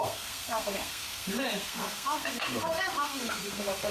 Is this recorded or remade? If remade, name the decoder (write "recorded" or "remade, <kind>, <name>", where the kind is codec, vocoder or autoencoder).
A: remade, codec, SNAC